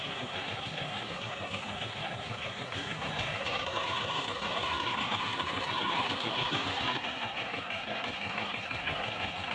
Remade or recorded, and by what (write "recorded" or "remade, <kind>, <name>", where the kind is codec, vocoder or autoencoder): remade, codec, SNAC